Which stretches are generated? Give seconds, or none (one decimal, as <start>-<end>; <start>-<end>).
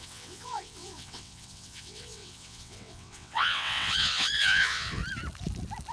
0.0-5.0